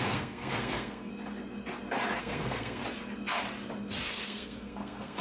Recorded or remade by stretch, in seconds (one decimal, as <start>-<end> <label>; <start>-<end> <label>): 0.0-1.1 remade; 1.1-2.2 recorded; 2.2-2.8 remade; 2.8-4.1 recorded; 4.1-5.2 remade